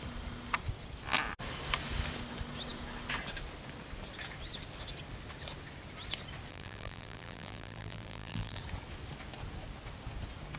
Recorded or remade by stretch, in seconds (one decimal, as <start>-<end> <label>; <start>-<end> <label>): 0.0-6.5 recorded; 6.5-8.6 remade; 8.6-10.6 recorded